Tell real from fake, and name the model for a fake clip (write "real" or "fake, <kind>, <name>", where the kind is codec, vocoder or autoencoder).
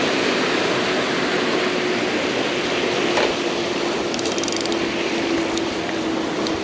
real